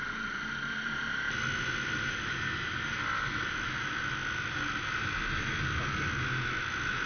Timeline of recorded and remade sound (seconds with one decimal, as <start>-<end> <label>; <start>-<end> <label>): 0.0-7.1 recorded